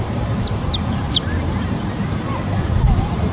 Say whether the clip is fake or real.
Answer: fake